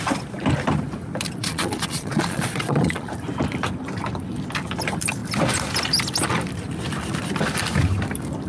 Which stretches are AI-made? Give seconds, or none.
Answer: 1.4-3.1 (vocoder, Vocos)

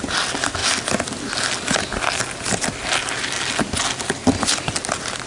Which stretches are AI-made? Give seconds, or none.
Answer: none

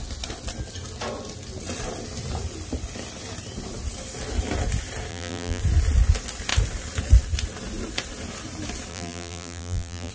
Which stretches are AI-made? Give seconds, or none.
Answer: 5.1-5.6 (vocoder, BigVGAN v2); 8.9-10.1